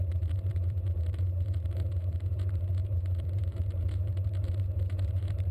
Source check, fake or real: fake